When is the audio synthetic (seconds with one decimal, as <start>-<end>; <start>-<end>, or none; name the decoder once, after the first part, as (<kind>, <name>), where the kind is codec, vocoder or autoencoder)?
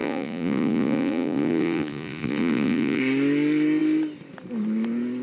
0.0-3.0 (vocoder, Vocos)